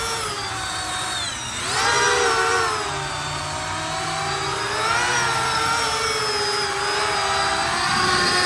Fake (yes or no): no